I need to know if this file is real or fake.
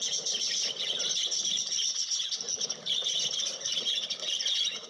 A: real